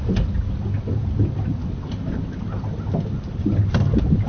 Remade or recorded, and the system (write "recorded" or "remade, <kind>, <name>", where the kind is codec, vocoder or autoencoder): recorded